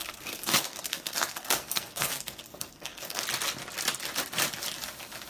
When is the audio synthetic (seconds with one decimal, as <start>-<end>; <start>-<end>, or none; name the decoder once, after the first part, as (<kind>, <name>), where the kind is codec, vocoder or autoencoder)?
0.0-3.2 (codec, SNAC)